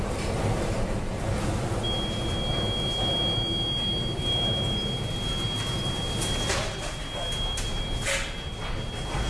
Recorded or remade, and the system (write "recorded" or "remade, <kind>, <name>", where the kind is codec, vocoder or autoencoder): recorded